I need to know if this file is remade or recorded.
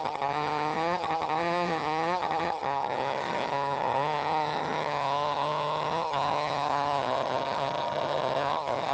remade